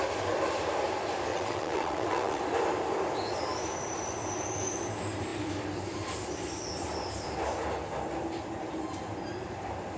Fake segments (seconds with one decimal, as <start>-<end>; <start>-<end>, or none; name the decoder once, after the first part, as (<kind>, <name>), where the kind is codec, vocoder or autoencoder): 1.3-2.4 (vocoder, WaveNeXt)